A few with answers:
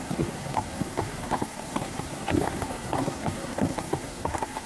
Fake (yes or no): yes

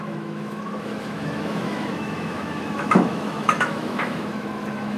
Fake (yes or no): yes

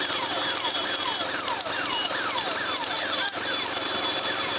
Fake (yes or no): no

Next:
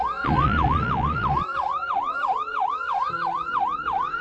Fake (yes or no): yes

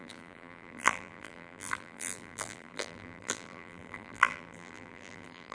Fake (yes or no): yes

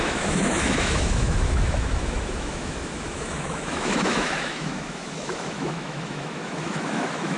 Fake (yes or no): yes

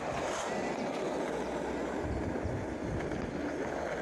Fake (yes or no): no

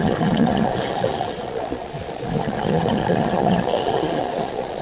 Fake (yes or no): yes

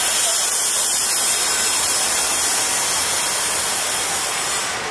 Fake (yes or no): no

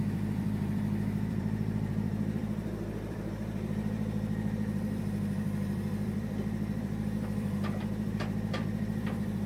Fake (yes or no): yes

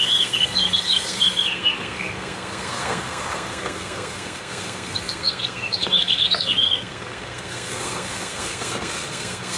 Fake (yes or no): yes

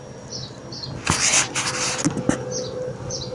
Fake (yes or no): no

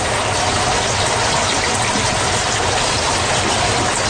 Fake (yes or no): no